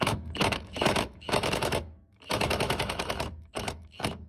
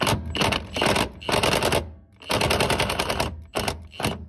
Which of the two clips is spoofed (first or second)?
first